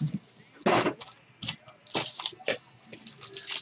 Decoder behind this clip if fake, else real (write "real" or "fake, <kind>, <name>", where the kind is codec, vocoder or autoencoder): real